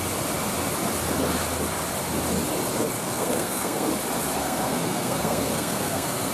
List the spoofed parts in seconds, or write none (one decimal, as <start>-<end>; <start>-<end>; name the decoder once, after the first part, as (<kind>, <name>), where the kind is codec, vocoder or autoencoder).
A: 3.0-3.9 (codec, SNAC); 4.4-6.3